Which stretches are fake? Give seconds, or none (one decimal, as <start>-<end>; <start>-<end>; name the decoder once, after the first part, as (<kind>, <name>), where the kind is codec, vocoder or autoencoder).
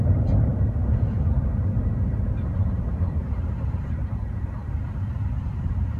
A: 0.0-4.6 (vocoder, BigVGAN v2); 5.3-6.0